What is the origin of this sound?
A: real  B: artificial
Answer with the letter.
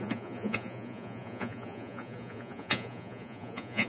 B